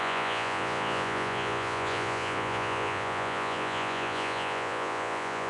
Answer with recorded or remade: remade